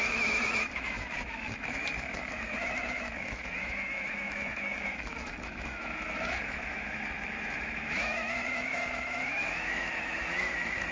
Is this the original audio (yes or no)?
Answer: no